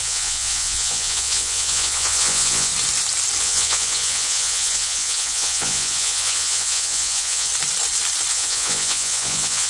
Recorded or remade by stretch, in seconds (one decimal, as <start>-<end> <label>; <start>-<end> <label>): 0.0-2.7 remade; 2.7-3.4 recorded; 3.4-7.5 remade; 7.5-8.3 recorded; 8.3-9.7 remade